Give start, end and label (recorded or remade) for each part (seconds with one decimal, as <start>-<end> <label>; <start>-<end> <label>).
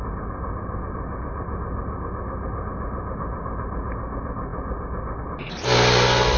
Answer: 0.0-6.4 recorded